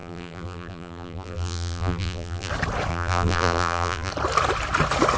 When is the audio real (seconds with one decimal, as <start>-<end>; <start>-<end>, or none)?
2.5-2.9; 4.1-5.2